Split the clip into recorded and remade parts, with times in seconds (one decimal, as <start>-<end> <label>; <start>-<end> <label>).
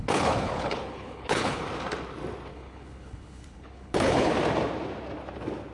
0.0-1.6 remade; 1.6-2.5 recorded; 2.5-4.3 remade; 4.3-5.7 recorded